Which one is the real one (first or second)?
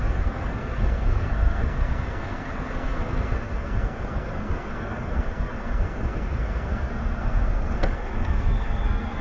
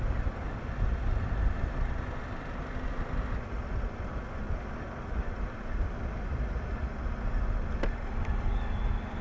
second